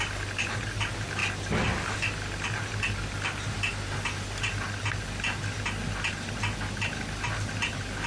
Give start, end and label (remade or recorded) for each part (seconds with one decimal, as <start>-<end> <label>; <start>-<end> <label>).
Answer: 0.0-8.1 recorded